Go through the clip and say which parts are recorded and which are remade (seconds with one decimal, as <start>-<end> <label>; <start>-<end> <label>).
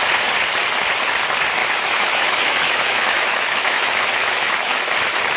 0.0-1.6 recorded; 1.6-4.8 remade; 4.8-5.4 recorded